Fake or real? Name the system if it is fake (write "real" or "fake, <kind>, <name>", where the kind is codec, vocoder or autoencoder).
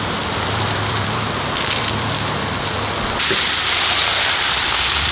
fake, vocoder, BigVGAN v2